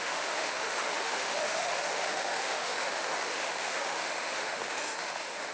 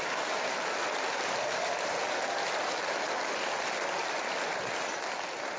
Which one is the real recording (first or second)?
second